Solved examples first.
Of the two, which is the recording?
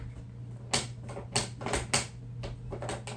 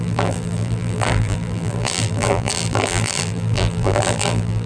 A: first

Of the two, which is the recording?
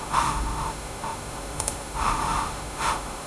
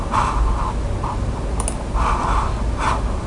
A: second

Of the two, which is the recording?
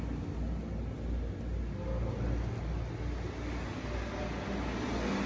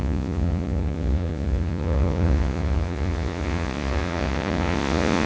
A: first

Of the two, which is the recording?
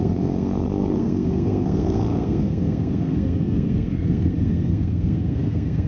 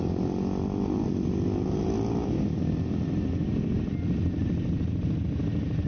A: second